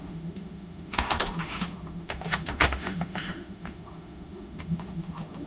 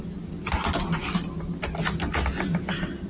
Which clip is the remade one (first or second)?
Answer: first